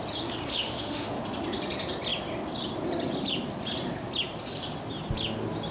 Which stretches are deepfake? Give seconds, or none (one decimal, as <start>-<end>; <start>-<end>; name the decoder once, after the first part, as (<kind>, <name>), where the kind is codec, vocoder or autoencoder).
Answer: 0.5-1.2 (autoencoder, DAC-VAE)

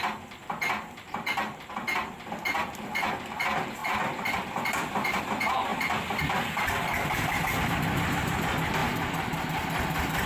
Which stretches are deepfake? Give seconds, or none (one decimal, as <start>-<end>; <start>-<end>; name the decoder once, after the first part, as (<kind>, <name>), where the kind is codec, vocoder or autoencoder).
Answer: 3.8-5.2 (vocoder, BigVGAN v2); 5.7-8.4

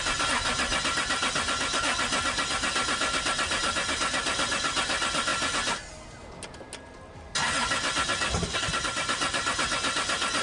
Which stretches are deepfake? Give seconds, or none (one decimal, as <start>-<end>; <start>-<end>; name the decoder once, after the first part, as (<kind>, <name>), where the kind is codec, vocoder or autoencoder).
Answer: 5.3-5.9 (vocoder, BigVGAN v2)